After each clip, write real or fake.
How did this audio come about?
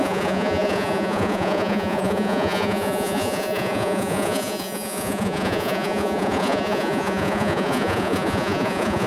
fake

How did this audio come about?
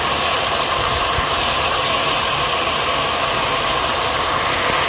real